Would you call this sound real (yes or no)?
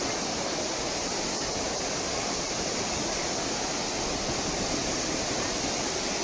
yes